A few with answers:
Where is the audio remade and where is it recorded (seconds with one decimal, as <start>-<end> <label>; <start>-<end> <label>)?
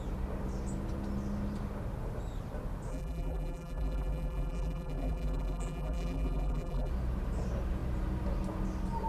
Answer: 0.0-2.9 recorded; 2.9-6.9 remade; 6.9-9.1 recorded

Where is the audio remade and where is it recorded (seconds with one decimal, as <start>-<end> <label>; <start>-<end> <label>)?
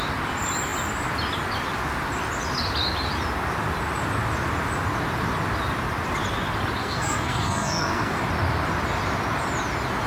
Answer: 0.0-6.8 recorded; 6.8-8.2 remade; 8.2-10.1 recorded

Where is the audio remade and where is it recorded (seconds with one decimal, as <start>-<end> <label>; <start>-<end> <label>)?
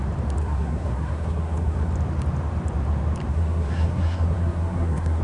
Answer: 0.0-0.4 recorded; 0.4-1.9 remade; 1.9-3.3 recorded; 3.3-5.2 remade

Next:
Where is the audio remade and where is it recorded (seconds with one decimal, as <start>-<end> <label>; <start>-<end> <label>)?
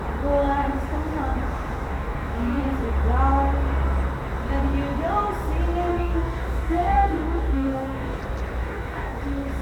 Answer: 0.0-1.9 recorded; 1.9-2.6 remade; 2.6-5.9 recorded; 5.9-8.2 remade; 8.2-8.6 recorded; 8.6-9.2 remade; 9.2-9.6 recorded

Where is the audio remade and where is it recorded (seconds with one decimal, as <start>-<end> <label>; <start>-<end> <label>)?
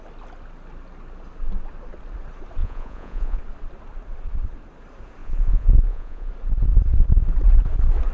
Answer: 0.0-2.6 recorded; 2.6-3.4 remade; 3.4-5.2 recorded; 5.2-6.3 remade; 6.3-8.1 recorded